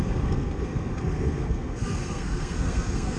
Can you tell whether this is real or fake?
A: fake